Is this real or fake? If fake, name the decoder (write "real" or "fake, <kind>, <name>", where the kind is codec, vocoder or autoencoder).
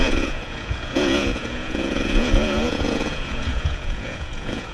fake, vocoder, Vocos